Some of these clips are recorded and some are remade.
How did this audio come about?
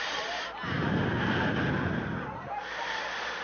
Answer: recorded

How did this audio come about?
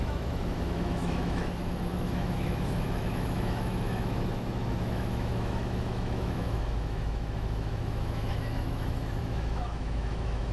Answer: remade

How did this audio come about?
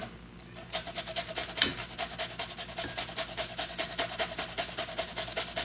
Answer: recorded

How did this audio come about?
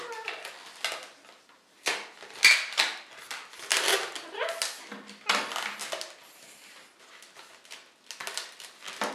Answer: recorded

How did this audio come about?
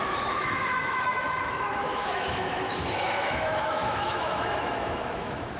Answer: remade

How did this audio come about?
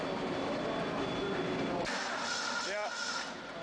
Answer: recorded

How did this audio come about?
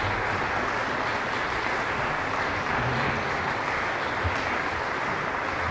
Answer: recorded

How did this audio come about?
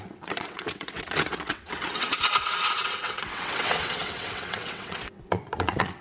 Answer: remade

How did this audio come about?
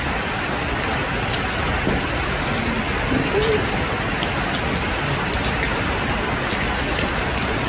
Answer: recorded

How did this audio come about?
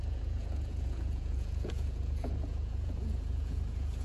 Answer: remade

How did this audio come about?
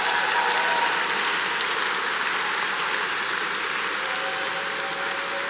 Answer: recorded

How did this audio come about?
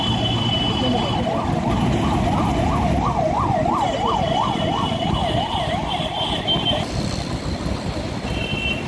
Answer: recorded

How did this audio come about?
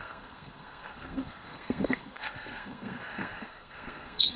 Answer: remade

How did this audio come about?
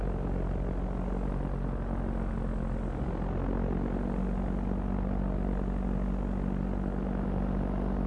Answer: recorded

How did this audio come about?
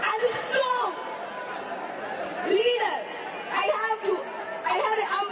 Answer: recorded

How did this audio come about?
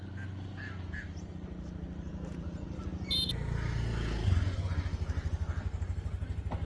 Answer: recorded